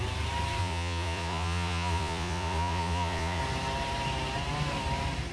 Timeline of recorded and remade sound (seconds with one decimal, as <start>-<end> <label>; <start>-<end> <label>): 0.0-0.6 recorded; 0.6-3.4 remade; 3.4-5.3 recorded